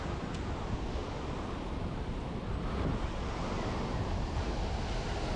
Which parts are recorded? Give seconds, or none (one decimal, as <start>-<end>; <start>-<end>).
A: 0.0-5.4